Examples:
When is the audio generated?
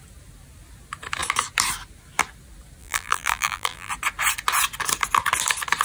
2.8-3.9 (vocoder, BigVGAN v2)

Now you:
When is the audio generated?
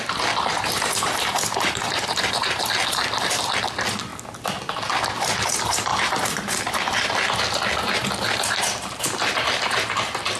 0.5-2.6 (vocoder, BigVGAN v2); 5.9-7.1